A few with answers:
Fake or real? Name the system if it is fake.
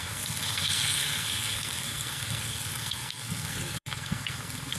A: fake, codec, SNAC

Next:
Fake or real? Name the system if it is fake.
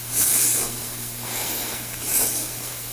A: fake, codec, SNAC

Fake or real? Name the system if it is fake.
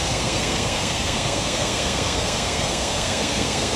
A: fake, codec, SNAC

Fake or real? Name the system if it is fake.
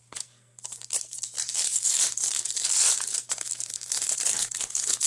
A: fake, codec, SNAC